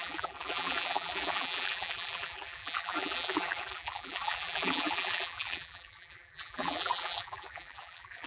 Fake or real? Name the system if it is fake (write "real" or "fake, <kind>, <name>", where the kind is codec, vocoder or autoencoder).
fake, vocoder, BigVGAN v2